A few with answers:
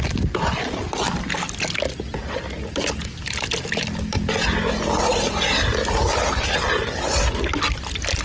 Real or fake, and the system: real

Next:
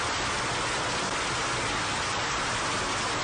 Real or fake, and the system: real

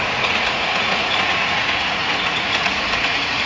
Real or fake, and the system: fake, vocoder, Vocos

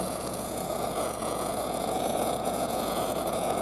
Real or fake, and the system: fake, vocoder, Vocos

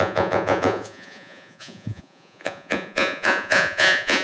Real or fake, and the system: fake, vocoder, Vocos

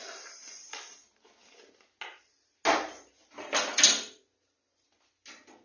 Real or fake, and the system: real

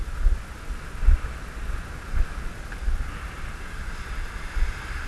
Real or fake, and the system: real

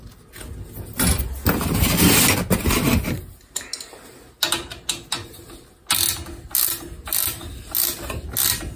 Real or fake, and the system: real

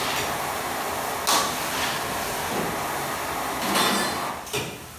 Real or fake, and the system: real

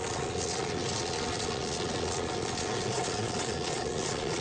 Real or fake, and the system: fake, vocoder, Vocos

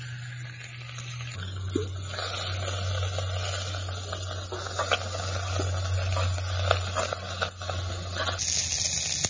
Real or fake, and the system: real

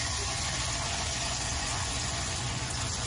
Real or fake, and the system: fake, vocoder, Vocos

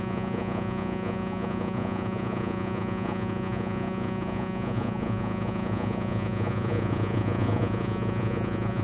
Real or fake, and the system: fake, vocoder, Vocos